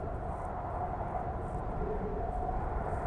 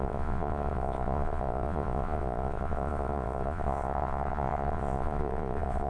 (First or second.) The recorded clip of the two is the first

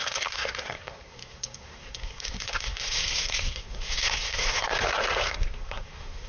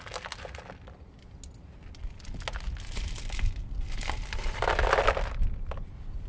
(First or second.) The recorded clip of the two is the second